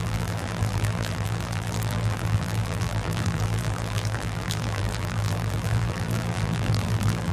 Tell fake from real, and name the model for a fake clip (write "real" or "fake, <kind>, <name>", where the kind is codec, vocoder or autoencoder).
fake, vocoder, BigVGAN v2